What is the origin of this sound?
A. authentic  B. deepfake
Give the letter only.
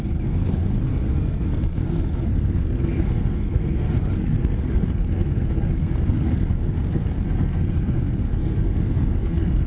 B